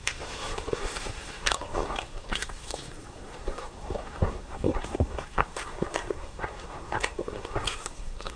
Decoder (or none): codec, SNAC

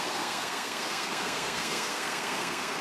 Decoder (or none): codec, SNAC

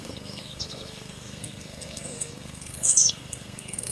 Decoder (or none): codec, SNAC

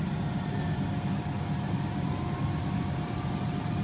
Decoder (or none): none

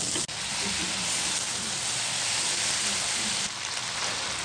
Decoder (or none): none